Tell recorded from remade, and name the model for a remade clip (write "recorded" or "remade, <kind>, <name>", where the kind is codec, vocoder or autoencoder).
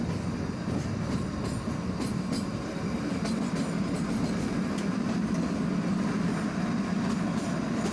recorded